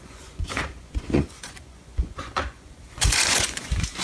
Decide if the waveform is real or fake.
fake